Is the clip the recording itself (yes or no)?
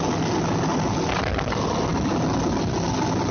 yes